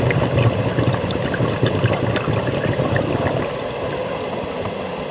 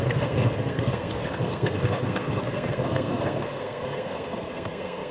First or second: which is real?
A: first